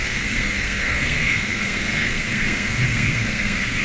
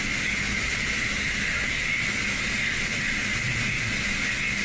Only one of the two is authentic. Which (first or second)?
second